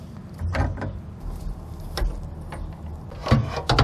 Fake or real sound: real